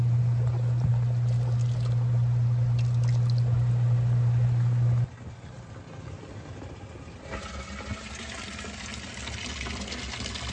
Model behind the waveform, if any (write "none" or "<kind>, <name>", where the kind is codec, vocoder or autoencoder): none